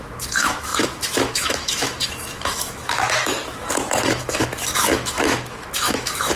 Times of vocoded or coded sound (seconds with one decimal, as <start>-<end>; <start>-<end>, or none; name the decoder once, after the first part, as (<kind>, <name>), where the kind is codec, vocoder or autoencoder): 0.0-6.4 (autoencoder, DAC-VAE)